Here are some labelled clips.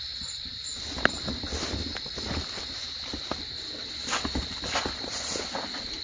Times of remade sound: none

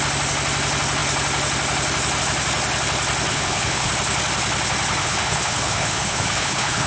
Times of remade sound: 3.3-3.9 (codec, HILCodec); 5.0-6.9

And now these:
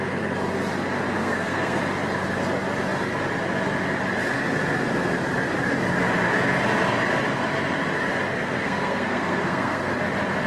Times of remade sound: 1.2-1.8 (codec, SNAC); 8.3-9.9

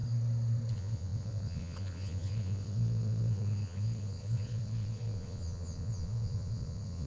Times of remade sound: 0.7-7.1 (vocoder, Vocos)

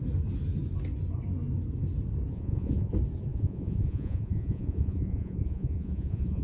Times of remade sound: 2.3-2.9 (vocoder, Vocos); 3.3-6.4

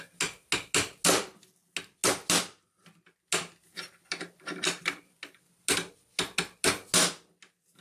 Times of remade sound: none